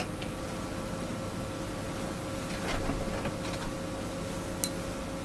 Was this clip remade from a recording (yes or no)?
no